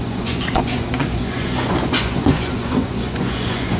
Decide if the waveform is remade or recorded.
remade